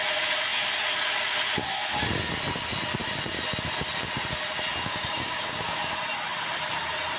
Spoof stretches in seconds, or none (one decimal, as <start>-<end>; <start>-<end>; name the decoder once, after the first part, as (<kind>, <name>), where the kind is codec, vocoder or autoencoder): 4.9-5.9 (codec, DAC)